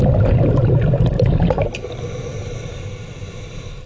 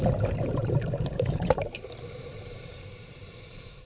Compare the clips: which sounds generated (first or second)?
second